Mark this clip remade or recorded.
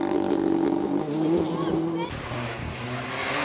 recorded